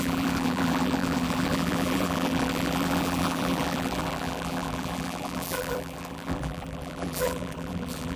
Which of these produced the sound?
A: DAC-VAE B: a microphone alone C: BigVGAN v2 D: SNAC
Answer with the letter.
C